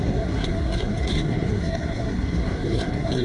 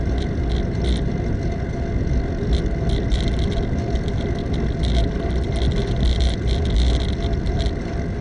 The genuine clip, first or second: second